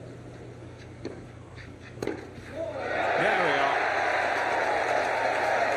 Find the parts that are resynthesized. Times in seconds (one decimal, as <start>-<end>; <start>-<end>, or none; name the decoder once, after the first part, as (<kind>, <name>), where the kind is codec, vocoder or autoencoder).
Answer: 0.6-2.2 (codec, DAC)